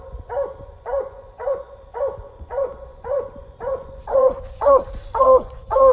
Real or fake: fake